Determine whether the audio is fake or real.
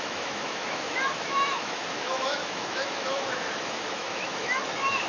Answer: fake